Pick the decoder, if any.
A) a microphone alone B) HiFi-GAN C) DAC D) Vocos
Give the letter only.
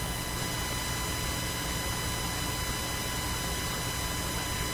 A